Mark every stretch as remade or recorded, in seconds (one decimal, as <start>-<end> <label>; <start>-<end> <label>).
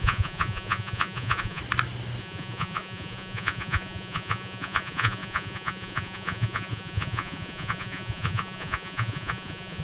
0.0-1.6 remade; 1.6-2.2 recorded; 2.2-9.8 remade